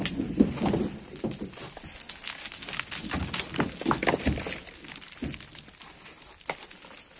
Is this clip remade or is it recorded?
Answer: recorded